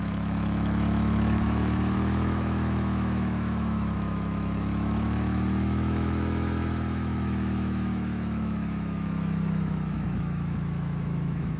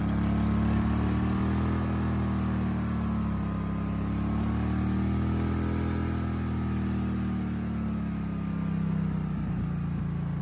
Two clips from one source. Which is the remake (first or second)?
first